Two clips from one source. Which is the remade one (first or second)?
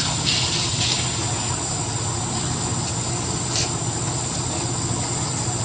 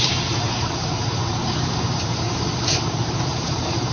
second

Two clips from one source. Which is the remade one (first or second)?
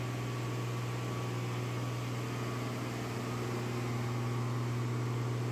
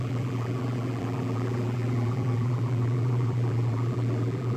second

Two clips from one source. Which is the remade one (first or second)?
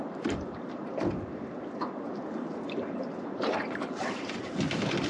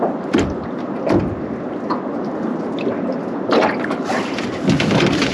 first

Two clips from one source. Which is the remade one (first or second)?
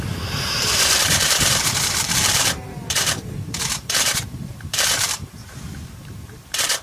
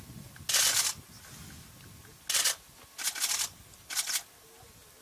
first